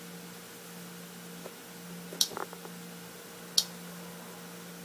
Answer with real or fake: real